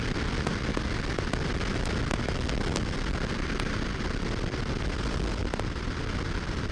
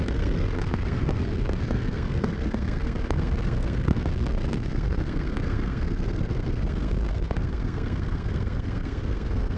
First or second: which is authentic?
first